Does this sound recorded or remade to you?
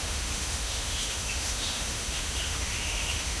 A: remade